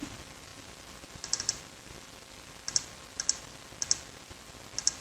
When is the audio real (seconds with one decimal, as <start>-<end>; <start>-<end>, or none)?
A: 0.0-5.0